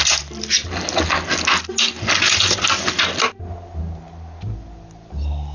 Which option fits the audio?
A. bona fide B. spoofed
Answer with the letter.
A